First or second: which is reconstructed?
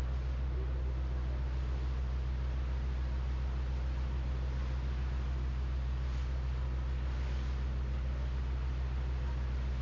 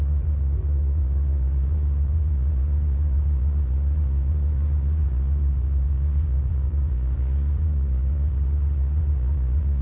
second